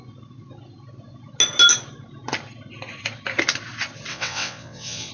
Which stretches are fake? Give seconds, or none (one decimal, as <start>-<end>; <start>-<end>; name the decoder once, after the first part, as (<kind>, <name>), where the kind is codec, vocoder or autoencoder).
4.1-5.1 (vocoder, WaveNeXt)